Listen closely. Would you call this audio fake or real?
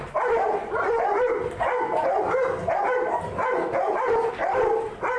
real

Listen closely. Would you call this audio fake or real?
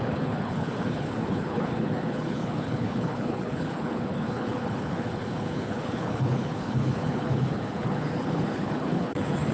fake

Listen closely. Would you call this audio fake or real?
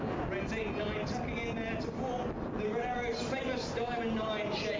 real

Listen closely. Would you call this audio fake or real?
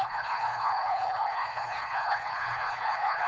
fake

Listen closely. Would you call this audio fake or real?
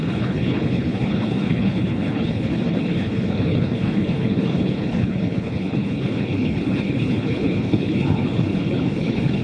fake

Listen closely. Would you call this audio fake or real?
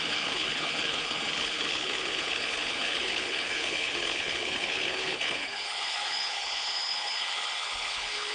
fake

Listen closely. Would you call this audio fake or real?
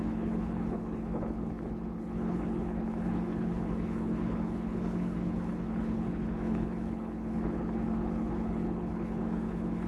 fake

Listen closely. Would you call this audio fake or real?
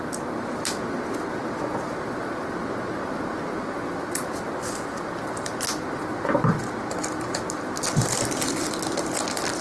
real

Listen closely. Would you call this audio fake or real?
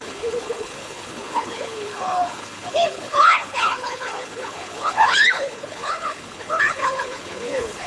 fake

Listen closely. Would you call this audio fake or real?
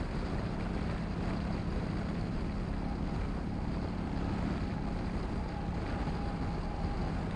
real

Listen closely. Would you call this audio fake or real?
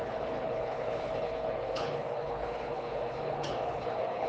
fake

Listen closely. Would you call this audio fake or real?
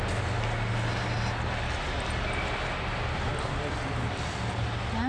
real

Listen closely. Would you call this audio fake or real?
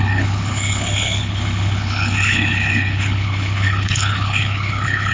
fake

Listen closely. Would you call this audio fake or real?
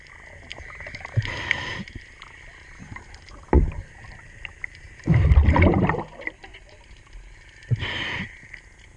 real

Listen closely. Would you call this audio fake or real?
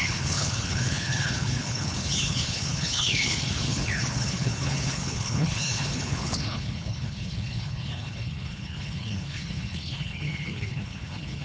fake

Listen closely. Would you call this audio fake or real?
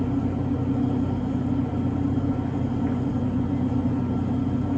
real